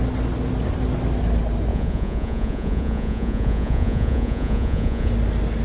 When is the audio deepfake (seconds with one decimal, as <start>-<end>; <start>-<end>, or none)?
1.7-5.1